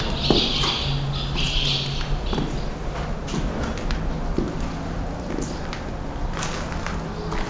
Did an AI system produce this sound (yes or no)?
no